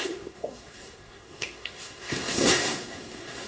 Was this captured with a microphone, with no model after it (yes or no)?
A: no